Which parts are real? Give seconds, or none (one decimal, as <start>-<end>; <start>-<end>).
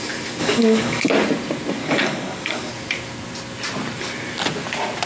0.0-0.4; 1.1-1.8; 2.7-5.1